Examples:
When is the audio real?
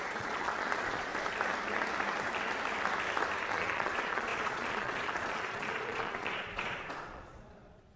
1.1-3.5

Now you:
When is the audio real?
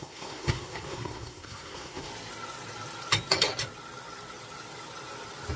2.1-5.6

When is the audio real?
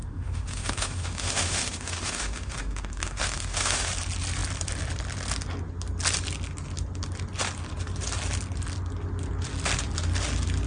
3.9-10.7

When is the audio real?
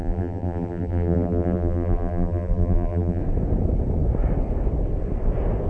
3.2-5.7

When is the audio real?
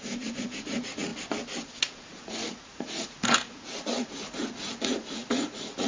1.1-1.8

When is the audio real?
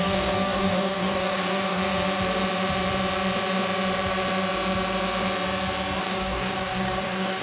1.8-6.0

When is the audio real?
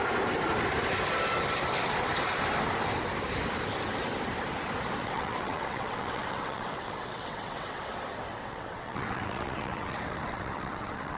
0.0-5.0; 7.8-8.3